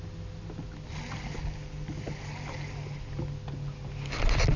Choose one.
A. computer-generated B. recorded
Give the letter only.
B